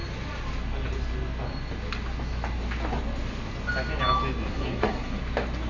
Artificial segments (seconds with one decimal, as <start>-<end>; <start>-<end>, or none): 4.5-5.2